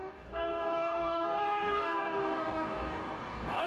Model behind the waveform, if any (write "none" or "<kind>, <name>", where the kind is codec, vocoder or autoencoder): codec, DAC